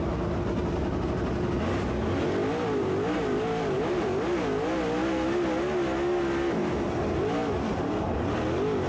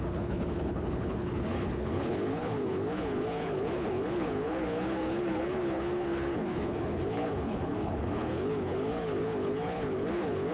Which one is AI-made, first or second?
second